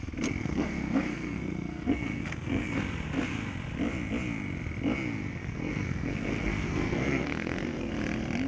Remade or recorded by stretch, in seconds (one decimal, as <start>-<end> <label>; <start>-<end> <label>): 0.0-0.4 recorded; 0.4-2.8 remade; 2.8-5.4 recorded; 5.4-7.9 remade; 7.9-8.5 recorded